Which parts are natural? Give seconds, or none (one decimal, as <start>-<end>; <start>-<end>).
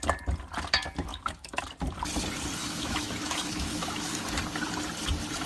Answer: 0.0-1.1; 1.6-2.6; 4.3-5.5